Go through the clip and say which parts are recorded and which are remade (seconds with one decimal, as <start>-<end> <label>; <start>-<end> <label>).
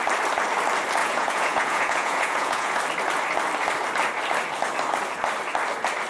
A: 0.0-1.0 recorded; 1.0-2.8 remade; 2.8-6.1 recorded